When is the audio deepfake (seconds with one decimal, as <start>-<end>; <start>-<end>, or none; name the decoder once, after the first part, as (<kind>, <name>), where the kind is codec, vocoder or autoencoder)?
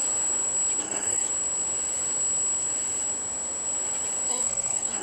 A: 0.8-1.3 (codec, SNAC); 4.3-5.0